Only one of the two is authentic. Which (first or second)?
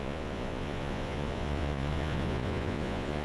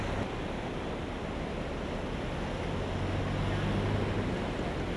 second